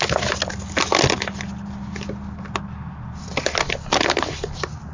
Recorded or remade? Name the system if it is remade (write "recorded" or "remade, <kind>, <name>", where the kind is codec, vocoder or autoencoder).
recorded